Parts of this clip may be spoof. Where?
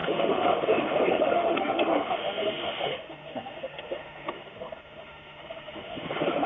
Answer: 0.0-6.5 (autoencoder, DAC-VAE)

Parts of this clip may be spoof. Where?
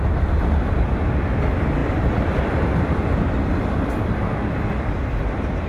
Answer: none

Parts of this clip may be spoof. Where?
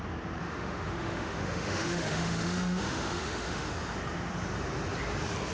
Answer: 0.4-3.7 (autoencoder, DAC-VAE)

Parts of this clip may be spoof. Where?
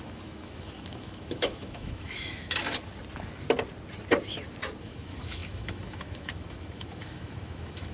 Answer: 0.0-2.6 (autoencoder, DAC-VAE); 4.8-7.9